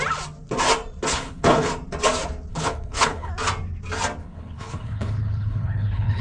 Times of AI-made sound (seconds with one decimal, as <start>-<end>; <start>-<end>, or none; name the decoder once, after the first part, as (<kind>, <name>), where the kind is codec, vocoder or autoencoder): 1.1-1.7 (codec, HILCodec); 2.5-3.3; 4.2-6.2